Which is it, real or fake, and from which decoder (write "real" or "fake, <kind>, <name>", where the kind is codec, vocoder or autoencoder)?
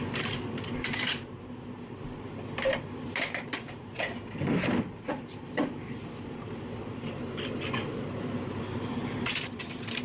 fake, vocoder, BigVGAN v2